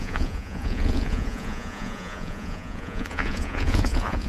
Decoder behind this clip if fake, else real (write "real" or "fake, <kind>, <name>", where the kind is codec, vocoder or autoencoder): fake, vocoder, Vocos